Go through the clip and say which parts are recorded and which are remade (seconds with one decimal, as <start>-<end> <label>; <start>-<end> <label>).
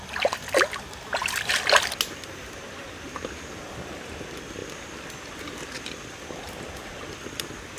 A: 0.0-7.8 recorded